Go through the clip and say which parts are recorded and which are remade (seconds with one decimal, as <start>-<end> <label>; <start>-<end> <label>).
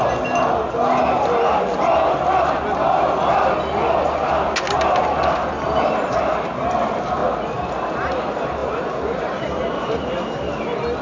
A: 0.0-11.0 recorded